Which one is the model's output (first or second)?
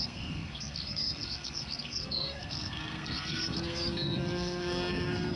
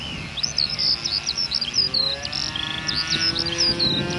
first